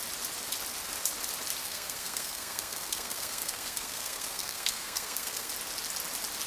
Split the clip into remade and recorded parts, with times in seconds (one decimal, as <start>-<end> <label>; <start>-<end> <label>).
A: 0.0-1.6 recorded; 1.6-5.5 remade; 5.5-6.5 recorded